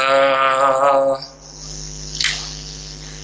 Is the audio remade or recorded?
recorded